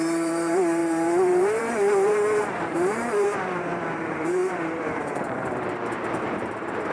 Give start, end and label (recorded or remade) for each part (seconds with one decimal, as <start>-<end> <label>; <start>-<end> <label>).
0.0-6.9 remade